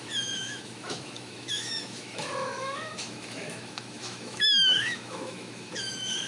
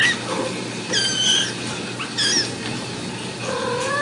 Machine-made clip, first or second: first